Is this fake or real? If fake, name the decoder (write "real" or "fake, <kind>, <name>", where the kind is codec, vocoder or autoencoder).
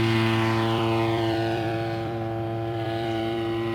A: fake, vocoder, BigVGAN v2